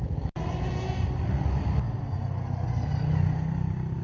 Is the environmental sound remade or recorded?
recorded